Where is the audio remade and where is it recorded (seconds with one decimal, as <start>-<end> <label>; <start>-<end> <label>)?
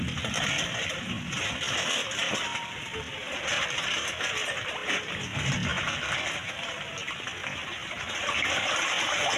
0.0-9.4 recorded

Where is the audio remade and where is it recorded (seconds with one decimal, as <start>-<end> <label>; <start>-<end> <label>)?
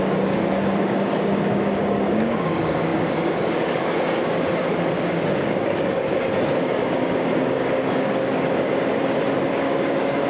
0.0-8.9 remade; 8.9-9.5 recorded; 9.5-10.3 remade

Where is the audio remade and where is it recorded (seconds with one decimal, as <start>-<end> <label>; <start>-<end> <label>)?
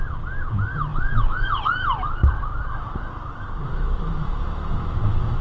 0.0-3.7 recorded; 3.7-5.4 remade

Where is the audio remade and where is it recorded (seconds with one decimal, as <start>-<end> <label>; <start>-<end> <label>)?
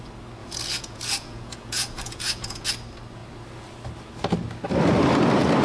0.0-0.4 recorded; 0.4-2.7 remade; 2.7-5.6 recorded